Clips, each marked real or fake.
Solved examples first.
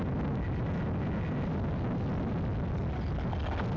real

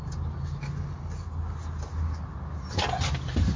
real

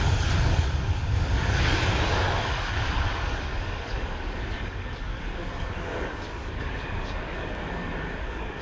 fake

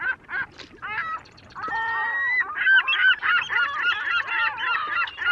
fake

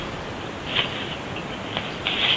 real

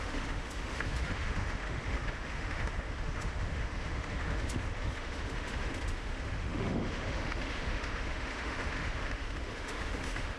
fake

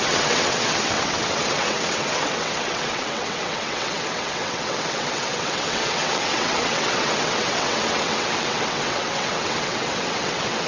fake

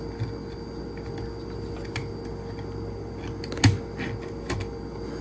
real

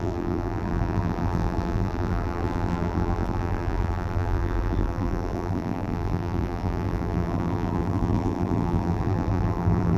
fake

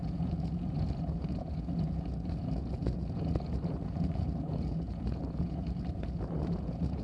fake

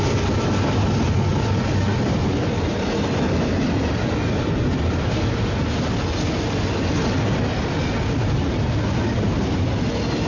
real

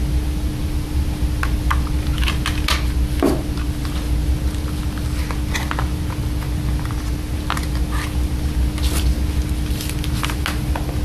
real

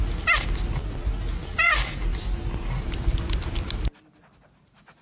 real